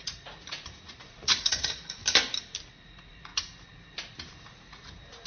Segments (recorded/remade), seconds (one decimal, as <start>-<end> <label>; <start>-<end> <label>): 0.0-2.0 remade; 2.0-2.7 recorded; 2.7-3.3 remade; 3.3-4.4 recorded; 4.4-5.3 remade